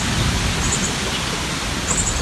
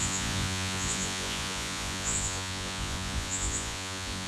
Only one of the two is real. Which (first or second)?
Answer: first